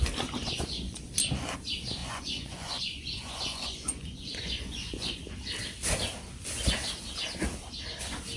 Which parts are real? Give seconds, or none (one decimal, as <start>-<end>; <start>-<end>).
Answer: 0.0-0.4; 1.1-2.0; 5.2-8.4